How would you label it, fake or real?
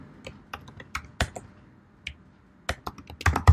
real